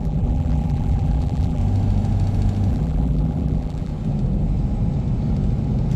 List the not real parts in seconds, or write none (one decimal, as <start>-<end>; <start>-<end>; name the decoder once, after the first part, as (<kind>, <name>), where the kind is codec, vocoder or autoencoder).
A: 0.0-1.6 (vocoder, BigVGAN v2); 2.7-3.9